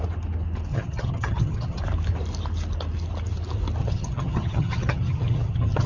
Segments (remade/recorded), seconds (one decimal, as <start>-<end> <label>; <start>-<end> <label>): 0.0-0.7 recorded; 0.7-1.8 remade; 1.8-3.8 recorded; 3.8-5.9 remade